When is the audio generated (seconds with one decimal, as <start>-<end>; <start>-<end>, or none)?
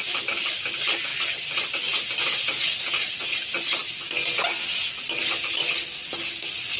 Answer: none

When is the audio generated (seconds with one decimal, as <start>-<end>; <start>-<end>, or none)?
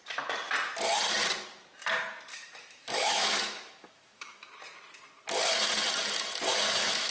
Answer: 2.3-4.5; 6.5-7.1